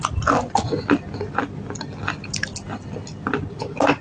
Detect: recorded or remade recorded